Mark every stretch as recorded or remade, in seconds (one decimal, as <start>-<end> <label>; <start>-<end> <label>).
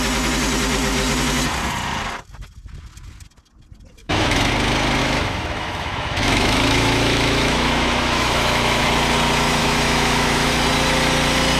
0.0-4.0 recorded; 4.0-4.5 remade; 4.5-5.0 recorded; 5.0-8.8 remade; 8.8-9.6 recorded; 9.6-10.5 remade; 10.5-11.6 recorded